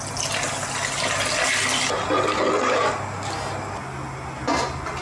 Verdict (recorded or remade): recorded